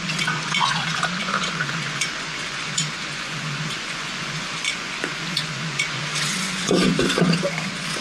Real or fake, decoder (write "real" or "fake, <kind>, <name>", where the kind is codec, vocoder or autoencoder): fake, vocoder, Vocos